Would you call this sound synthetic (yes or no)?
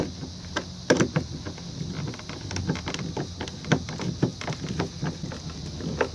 no